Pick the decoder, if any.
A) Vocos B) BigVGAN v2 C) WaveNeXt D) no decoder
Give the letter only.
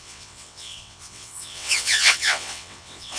C